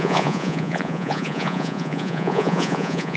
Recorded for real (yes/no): no